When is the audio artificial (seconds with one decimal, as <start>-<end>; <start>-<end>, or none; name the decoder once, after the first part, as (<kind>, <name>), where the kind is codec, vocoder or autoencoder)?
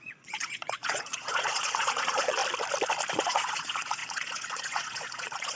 0.0-2.4 (vocoder, Vocos); 3.1-5.6